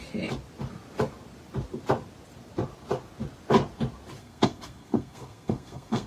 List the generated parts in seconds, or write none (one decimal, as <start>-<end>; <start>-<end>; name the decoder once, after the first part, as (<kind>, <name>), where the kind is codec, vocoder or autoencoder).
4.2-6.1 (codec, SNAC)